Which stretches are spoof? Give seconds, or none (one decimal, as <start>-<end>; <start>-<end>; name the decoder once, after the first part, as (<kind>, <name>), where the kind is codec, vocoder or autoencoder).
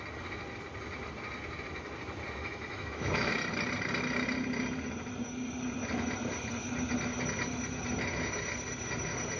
2.4-3.3 (autoencoder, DAC-VAE)